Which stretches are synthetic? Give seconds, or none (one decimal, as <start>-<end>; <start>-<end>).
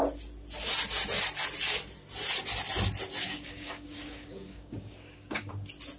3.2-5.5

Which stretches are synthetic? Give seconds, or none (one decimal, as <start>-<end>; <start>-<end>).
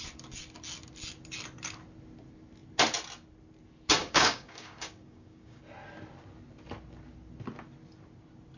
4.0-5.6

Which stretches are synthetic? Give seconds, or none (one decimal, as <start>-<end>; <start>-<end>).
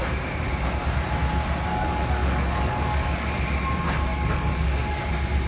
1.7-3.4; 4.1-5.1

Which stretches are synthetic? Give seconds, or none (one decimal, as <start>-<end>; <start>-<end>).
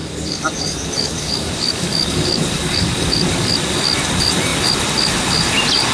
0.0-3.5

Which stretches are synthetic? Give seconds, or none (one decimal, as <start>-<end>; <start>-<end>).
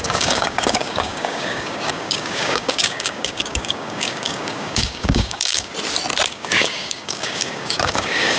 0.0-5.7; 6.3-8.4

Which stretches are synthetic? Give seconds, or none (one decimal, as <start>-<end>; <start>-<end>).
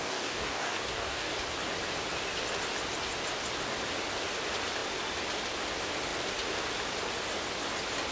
0.0-1.3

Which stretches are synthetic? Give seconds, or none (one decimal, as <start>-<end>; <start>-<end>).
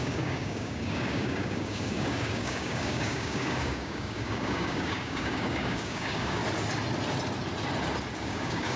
0.0-6.4; 8.2-8.8